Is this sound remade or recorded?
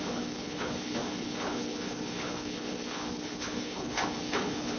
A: remade